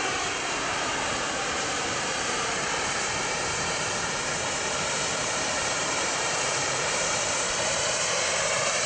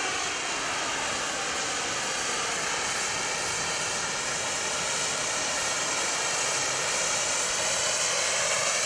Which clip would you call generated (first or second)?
first